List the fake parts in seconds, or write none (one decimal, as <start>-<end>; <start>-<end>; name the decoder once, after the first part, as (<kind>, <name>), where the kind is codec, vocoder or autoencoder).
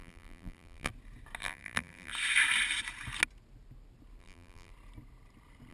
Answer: 0.0-0.9 (vocoder, BigVGAN v2); 1.4-2.1; 4.2-4.7